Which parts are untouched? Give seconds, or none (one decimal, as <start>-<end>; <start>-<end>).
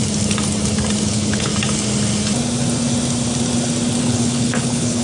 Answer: 0.0-1.1; 1.5-4.0